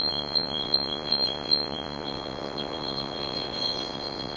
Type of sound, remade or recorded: remade